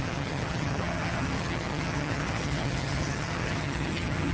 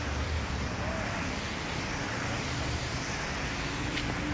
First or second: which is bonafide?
second